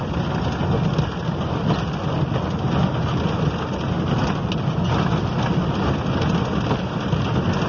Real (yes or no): yes